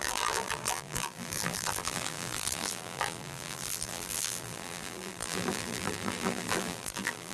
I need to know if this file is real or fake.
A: fake